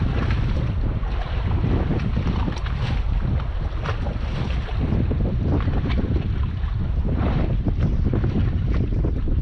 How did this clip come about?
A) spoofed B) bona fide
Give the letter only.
B